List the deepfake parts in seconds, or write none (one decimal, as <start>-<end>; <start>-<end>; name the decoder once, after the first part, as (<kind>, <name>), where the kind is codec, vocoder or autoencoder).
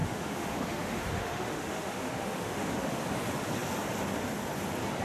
0.0-3.0 (autoencoder, DAC-VAE)